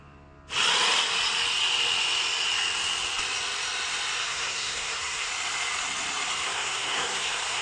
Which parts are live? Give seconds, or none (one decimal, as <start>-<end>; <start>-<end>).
0.0-4.2; 5.3-6.3